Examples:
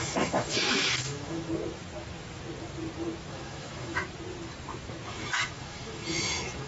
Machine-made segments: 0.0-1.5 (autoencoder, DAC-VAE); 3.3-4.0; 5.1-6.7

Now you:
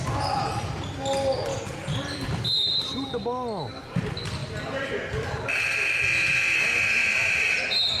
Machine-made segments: 1.5-2.4 (vocoder, BigVGAN v2); 4.4-4.9; 7.0-8.0

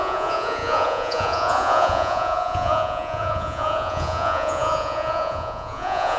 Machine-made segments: 0.0-6.2 (vocoder, Vocos)

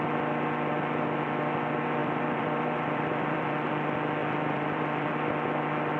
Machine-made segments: 2.0-3.7 (vocoder, BigVGAN v2); 4.2-5.1

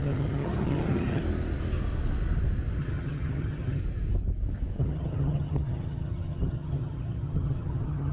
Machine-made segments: 0.0-1.2 (vocoder, HiFi-GAN); 2.8-3.8; 4.8-8.1